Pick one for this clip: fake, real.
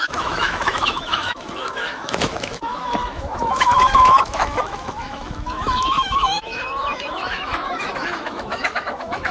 fake